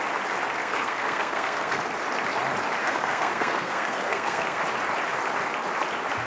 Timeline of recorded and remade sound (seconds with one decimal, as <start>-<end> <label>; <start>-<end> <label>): 0.0-0.6 recorded; 0.6-1.8 remade; 1.8-2.8 recorded; 2.8-4.6 remade; 4.6-6.3 recorded